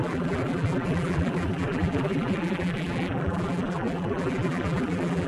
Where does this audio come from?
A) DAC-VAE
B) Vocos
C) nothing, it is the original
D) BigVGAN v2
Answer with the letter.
D